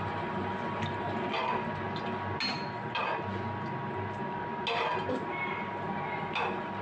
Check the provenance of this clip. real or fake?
real